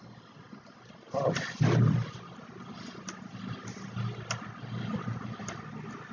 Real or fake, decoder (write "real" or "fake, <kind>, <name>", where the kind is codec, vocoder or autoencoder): real